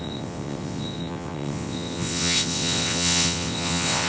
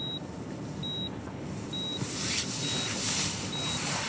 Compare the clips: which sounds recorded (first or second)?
second